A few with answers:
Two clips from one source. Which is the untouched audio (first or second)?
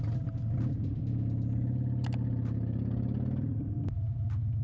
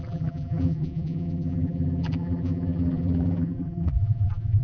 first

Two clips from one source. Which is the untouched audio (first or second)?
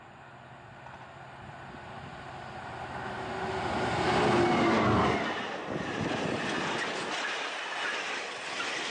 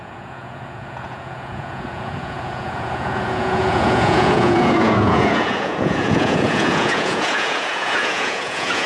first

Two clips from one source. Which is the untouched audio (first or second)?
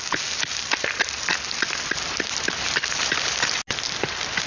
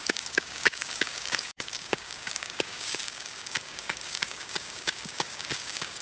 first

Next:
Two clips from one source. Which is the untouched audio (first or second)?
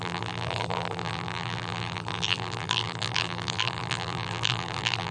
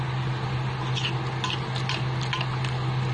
second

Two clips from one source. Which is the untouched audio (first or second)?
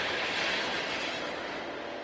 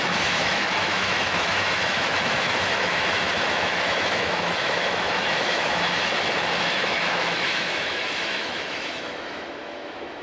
first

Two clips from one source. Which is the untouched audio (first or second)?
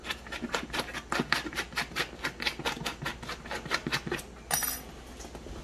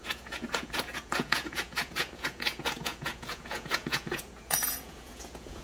first